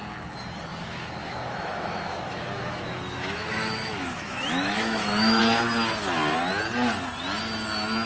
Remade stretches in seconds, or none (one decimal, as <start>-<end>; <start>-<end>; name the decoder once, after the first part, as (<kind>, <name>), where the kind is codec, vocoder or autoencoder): 0.7-5.4 (autoencoder, DAC-VAE)